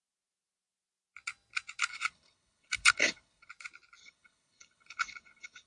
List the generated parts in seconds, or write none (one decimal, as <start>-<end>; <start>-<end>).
1.9-3.5; 4.0-5.7